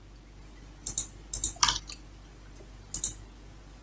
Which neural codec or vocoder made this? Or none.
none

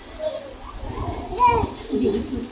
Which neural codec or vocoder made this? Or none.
none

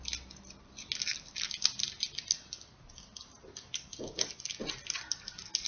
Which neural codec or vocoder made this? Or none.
none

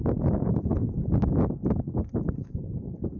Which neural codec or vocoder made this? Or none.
none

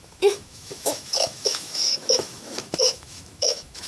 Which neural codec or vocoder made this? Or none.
autoencoder, DAC-VAE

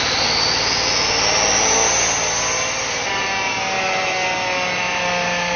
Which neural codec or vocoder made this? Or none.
none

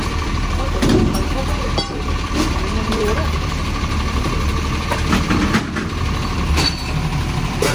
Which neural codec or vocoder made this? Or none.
vocoder, BigVGAN v2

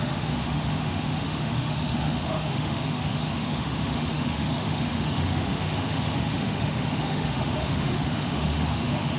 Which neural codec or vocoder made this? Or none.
autoencoder, DAC-VAE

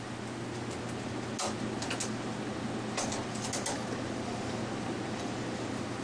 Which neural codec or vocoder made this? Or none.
none